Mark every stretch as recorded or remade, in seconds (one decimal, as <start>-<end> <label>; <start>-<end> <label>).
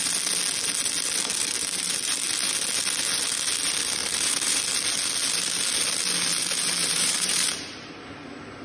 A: 0.0-4.0 recorded; 4.0-4.6 remade; 4.6-6.8 recorded; 6.8-7.9 remade; 7.9-8.6 recorded